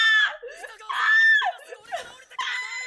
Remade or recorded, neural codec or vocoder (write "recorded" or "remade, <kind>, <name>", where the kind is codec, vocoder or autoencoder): recorded